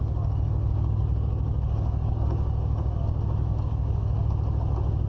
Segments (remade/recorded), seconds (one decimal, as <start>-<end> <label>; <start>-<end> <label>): 0.0-3.1 remade; 3.1-3.5 recorded; 3.5-4.3 remade; 4.3-5.1 recorded